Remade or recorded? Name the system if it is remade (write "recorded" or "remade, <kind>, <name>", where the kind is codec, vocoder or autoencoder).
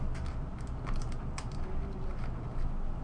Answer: recorded